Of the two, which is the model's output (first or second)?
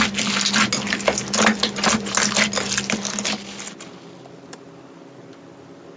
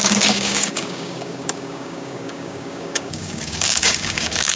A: second